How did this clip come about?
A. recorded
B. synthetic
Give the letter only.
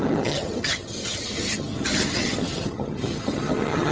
B